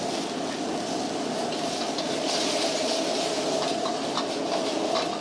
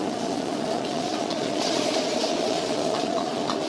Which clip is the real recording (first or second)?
first